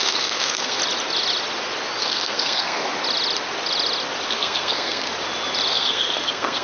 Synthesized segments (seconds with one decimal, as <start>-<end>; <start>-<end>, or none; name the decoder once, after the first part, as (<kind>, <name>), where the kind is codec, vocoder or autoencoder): 0.0-0.8 (codec, SNAC); 2.0-2.8; 4.3-5.1; 5.7-6.6